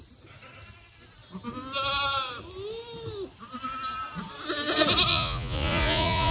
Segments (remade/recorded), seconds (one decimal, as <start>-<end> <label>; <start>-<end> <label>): 0.0-5.1 recorded; 5.1-6.3 remade